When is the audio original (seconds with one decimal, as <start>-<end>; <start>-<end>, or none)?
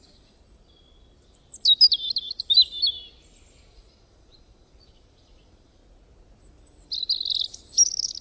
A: 0.4-3.7; 5.8-8.2